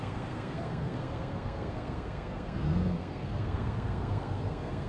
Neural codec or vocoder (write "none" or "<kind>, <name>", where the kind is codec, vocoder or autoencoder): codec, SNAC